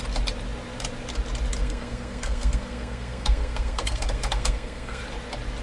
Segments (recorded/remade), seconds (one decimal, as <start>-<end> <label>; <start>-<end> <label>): 0.0-1.6 recorded; 1.6-5.0 remade; 5.0-5.6 recorded